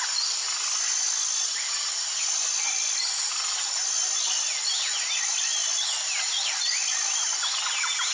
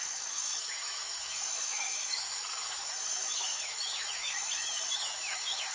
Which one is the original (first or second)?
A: first